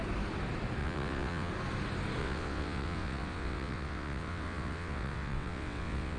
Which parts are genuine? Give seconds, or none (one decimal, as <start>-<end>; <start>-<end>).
0.0-0.8; 1.5-2.2